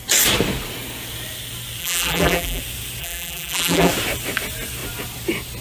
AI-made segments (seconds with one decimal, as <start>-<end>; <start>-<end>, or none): 1.8-2.6; 3.0-3.9